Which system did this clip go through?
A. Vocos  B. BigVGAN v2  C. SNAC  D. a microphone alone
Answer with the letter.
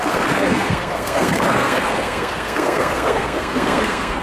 C